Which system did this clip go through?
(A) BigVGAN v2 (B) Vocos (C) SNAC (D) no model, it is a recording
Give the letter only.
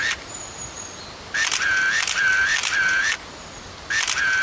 D